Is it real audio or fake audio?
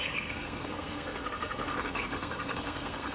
fake